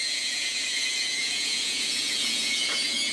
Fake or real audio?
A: fake